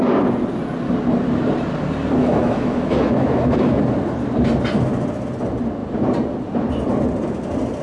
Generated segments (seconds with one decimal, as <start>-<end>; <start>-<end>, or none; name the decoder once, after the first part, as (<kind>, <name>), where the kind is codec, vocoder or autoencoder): 2.2-3.8 (autoencoder, DAC-VAE)